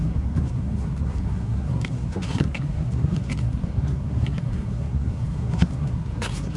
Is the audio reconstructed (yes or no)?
yes